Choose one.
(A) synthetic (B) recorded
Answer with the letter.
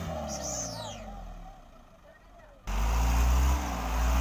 B